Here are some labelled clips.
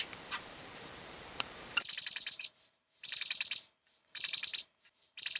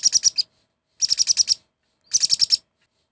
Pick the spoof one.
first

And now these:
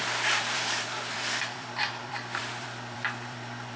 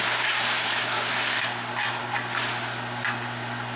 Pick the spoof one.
first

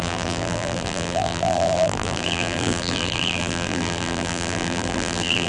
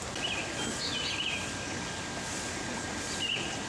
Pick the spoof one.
first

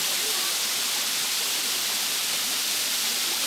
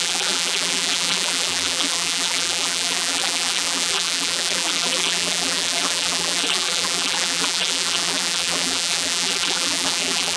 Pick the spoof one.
second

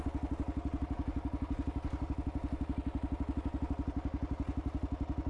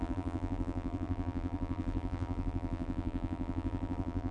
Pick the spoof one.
second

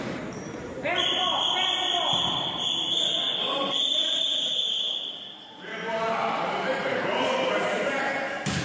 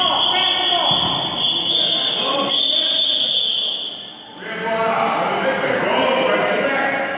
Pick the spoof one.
first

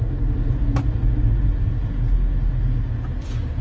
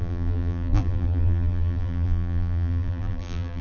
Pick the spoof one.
second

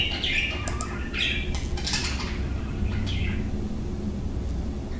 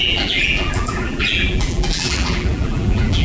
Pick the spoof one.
second